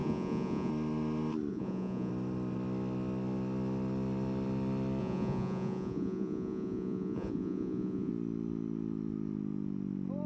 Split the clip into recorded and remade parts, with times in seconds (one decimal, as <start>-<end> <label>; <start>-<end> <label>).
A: 0.0-0.7 remade; 0.7-1.5 recorded; 1.5-2.1 remade; 2.1-5.0 recorded; 5.0-8.1 remade; 8.1-10.3 recorded